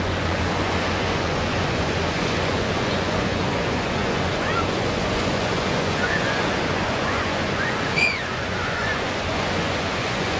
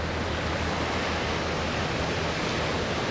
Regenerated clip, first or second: first